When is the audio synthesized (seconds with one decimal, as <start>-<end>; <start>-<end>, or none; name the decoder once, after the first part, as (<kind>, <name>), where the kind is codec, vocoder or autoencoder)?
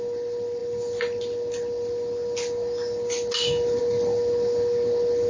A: none